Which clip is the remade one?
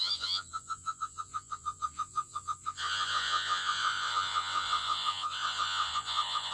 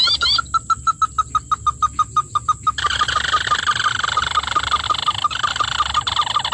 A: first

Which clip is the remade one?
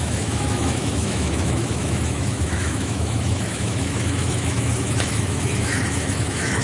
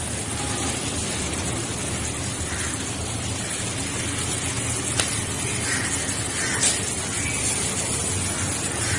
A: first